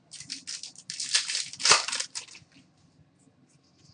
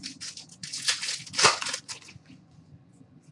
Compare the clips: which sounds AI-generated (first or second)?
second